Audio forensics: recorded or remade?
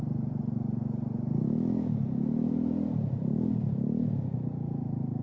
recorded